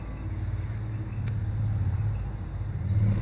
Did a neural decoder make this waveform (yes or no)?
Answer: no